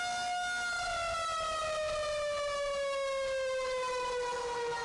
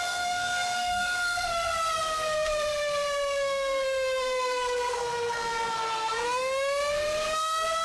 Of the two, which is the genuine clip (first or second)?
first